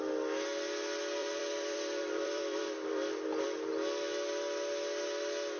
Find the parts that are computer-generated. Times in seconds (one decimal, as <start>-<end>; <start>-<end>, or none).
1.2-3.7